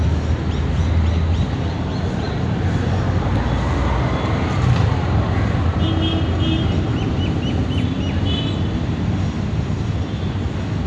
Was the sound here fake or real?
real